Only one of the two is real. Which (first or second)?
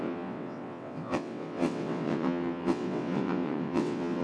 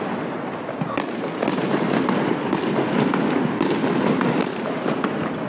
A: second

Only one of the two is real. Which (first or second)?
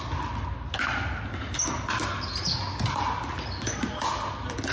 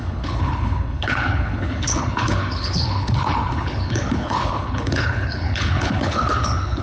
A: first